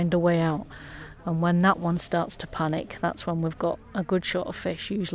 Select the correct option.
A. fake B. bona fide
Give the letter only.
B